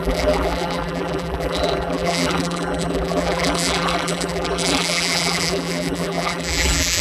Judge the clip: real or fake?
fake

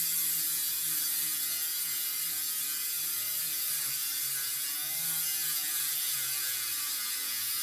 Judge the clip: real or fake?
real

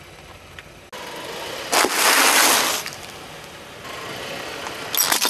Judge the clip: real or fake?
real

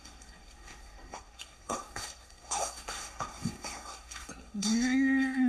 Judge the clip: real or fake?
fake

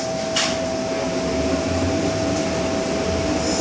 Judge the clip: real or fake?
real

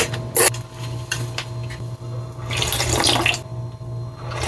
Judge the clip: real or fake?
real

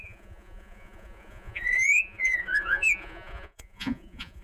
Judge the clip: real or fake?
fake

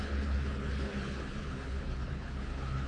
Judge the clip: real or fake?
fake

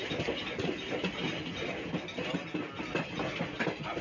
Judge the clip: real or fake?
real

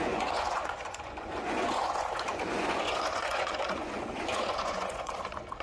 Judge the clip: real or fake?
fake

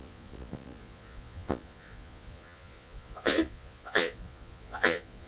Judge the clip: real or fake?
fake